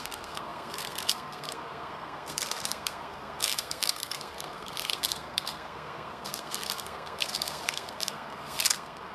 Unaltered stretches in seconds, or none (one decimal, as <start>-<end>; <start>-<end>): none